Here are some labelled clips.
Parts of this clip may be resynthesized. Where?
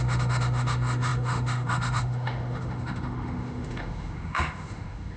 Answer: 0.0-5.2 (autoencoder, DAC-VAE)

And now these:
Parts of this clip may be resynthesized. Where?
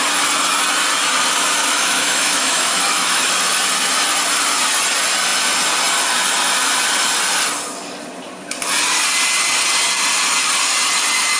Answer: 1.6-3.3 (autoencoder, DAC-VAE)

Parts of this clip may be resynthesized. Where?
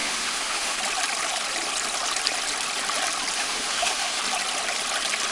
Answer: 0.0-0.8 (autoencoder, DAC-VAE); 3.4-4.2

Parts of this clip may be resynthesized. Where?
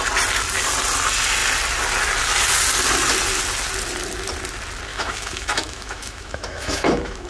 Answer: 4.9-7.3 (autoencoder, DAC-VAE)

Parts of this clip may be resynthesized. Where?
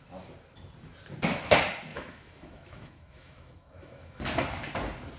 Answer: 1.9-4.2 (autoencoder, DAC-VAE)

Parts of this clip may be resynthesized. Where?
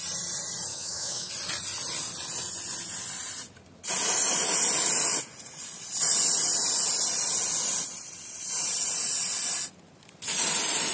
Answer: 0.7-1.3 (autoencoder, DAC-VAE)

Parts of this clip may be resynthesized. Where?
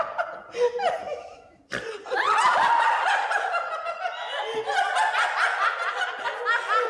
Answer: 1.0-1.6 (autoencoder, DAC-VAE)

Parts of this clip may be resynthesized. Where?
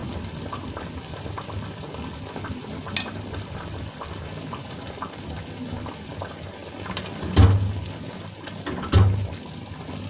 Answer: none